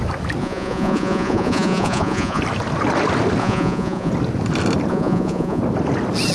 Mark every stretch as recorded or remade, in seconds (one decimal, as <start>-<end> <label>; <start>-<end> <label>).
0.0-0.4 recorded; 0.4-2.4 remade; 2.4-3.4 recorded; 3.4-4.1 remade; 4.1-4.9 recorded; 4.9-5.6 remade; 5.6-6.3 recorded